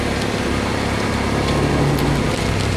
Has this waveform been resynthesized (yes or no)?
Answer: no